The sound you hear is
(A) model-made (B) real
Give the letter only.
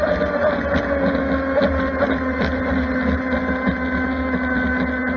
B